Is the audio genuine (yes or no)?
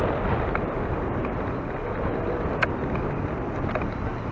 yes